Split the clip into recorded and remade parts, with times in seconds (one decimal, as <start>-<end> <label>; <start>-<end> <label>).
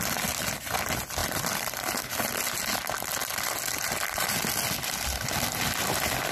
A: 0.0-1.2 recorded; 1.2-2.0 remade; 2.0-3.2 recorded; 3.2-4.4 remade; 4.4-6.3 recorded